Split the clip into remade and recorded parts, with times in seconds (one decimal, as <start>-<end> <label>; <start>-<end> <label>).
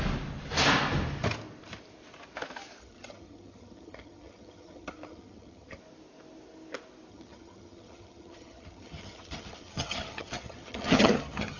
0.0-2.8 recorded; 2.8-5.8 remade; 5.8-7.1 recorded; 7.1-11.6 remade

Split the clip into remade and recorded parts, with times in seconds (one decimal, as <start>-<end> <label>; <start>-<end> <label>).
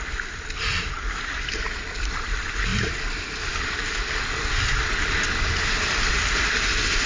0.0-7.1 recorded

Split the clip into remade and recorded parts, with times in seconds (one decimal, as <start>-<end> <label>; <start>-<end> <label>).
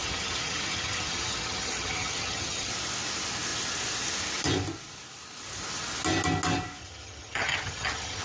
0.0-2.7 remade; 2.7-6.8 recorded; 6.8-8.2 remade